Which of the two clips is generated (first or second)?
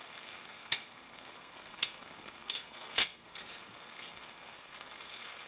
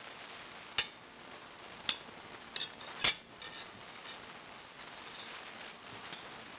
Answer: first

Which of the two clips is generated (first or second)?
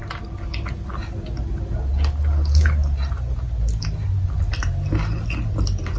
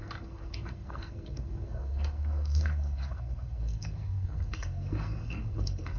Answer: second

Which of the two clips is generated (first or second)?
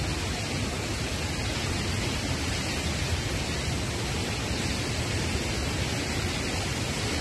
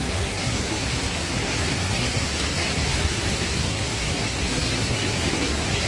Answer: second